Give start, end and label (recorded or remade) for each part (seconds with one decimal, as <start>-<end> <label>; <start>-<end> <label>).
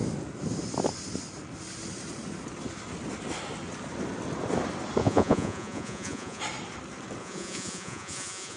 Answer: 0.0-5.0 recorded; 5.0-6.4 remade; 6.4-7.2 recorded; 7.2-8.6 remade